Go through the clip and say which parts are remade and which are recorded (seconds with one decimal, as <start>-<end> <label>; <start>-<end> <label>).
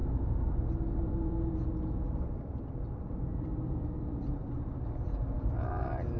0.0-2.6 remade; 2.6-4.4 recorded; 4.4-4.9 remade; 4.9-6.2 recorded